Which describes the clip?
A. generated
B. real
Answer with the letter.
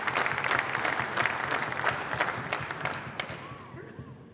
B